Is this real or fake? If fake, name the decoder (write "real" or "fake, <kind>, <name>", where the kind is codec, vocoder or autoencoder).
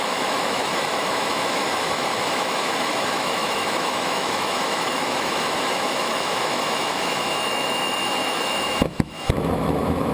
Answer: fake, autoencoder, DAC-VAE